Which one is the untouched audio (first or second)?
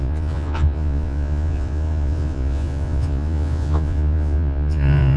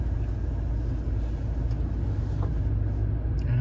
second